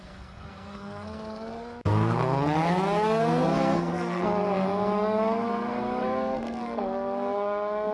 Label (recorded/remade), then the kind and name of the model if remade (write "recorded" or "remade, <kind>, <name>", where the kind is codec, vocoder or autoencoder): remade, codec, SNAC